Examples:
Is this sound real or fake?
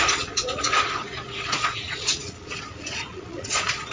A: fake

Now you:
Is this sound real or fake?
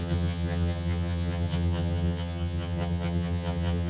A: fake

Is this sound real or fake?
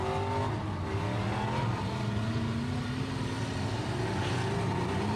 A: real